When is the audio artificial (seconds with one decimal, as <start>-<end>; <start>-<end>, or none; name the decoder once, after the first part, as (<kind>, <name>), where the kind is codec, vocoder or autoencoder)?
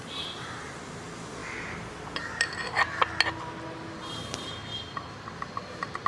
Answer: 0.0-1.4 (vocoder, BigVGAN v2); 4.0-4.6; 5.6-6.1